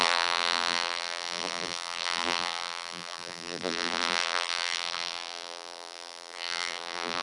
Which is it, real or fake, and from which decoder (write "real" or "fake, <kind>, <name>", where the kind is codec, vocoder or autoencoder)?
fake, vocoder, BigVGAN v2